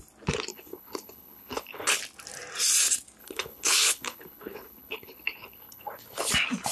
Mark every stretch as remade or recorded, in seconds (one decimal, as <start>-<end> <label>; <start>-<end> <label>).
0.0-0.5 recorded; 0.5-2.0 remade; 2.0-3.2 recorded; 3.2-6.3 remade; 6.3-6.7 recorded